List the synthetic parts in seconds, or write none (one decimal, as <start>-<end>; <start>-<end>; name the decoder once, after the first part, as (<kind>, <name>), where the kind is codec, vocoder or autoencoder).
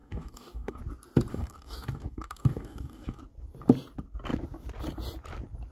0.0-0.8 (codec, DAC); 1.3-3.2